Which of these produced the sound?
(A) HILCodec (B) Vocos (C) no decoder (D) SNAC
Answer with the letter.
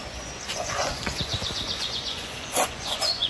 B